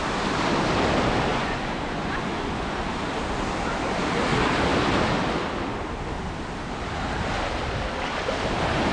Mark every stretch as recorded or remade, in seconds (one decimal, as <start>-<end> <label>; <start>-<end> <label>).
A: 0.0-1.3 recorded; 1.3-2.8 remade; 2.8-8.9 recorded